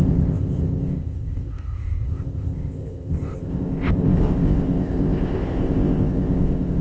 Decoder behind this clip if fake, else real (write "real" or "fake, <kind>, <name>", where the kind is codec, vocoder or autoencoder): fake, codec, ZipCodec